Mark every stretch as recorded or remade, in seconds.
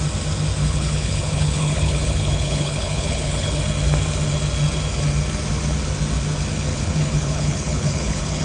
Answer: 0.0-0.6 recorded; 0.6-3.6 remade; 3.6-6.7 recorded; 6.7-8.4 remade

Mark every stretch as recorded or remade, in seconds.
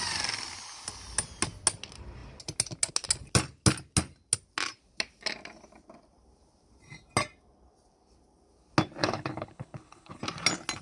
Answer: 0.0-9.0 recorded; 9.0-10.2 remade; 10.2-10.8 recorded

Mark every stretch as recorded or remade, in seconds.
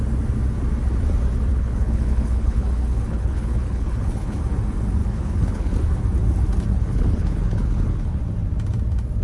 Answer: 0.0-1.5 recorded; 1.5-4.4 remade; 4.4-5.0 recorded; 5.0-5.7 remade; 5.7-6.7 recorded; 6.7-8.2 remade; 8.2-9.2 recorded